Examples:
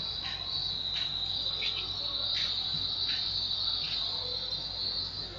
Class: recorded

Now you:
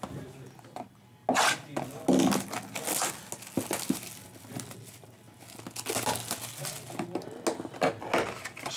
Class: recorded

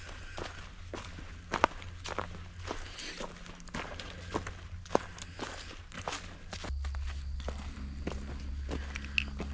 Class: recorded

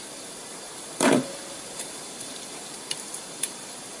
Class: remade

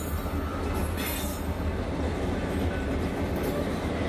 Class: recorded